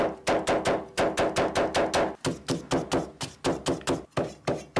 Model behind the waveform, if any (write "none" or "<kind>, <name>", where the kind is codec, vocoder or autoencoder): none